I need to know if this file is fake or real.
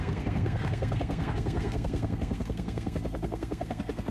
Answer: fake